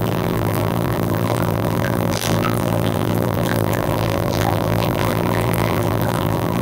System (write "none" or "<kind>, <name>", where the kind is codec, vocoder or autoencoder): vocoder, BigVGAN v2